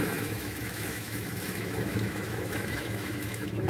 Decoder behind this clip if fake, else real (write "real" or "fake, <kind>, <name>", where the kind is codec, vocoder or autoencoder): fake, autoencoder, DAC-VAE